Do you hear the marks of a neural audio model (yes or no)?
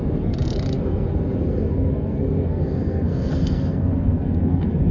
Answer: yes